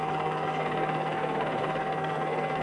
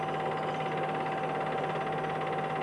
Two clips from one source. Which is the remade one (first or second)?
first